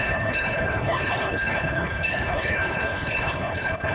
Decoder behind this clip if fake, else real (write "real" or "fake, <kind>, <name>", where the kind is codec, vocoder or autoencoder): fake, codec, HILCodec